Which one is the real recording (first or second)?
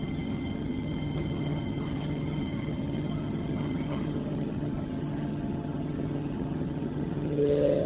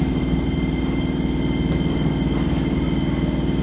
second